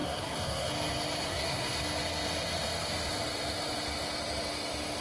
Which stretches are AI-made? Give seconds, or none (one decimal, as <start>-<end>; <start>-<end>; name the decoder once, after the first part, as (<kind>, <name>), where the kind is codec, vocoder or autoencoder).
0.0-0.7 (codec, SNAC); 1.2-1.8